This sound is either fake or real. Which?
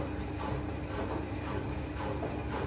real